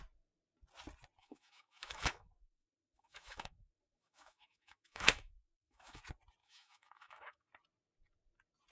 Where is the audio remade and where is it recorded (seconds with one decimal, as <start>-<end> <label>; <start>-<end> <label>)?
0.0-1.2 recorded; 1.2-6.0 remade; 6.0-6.4 recorded; 6.4-7.5 remade; 7.5-8.7 recorded